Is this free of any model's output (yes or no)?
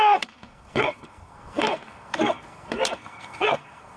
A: no